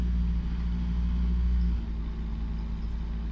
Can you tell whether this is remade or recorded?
recorded